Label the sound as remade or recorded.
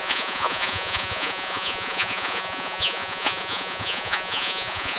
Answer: remade